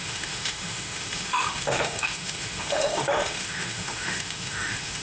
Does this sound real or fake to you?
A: fake